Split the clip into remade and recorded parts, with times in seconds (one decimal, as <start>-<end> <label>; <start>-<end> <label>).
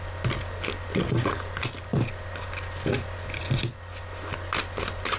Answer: 0.0-5.2 recorded